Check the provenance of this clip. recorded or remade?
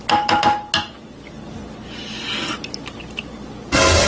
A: recorded